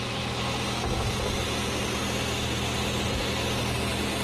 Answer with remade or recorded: recorded